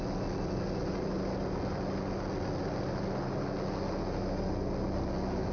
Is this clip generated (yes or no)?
no